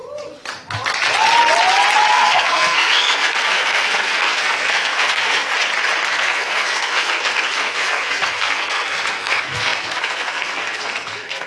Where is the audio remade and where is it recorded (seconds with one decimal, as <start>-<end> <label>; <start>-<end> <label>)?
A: 0.0-2.1 recorded; 2.1-5.5 remade; 5.5-6.1 recorded; 6.1-11.5 remade